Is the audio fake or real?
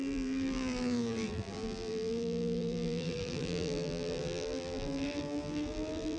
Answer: fake